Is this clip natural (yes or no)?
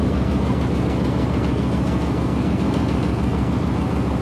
no